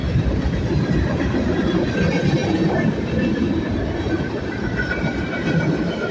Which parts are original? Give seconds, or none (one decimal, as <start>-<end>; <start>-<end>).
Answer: 0.0-0.9